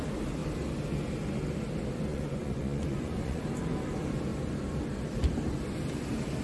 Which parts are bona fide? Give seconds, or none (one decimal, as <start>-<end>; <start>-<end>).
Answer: 0.0-2.1; 3.4-6.4